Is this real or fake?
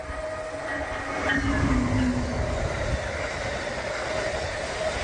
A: real